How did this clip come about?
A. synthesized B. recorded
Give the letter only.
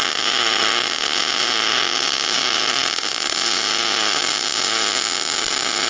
B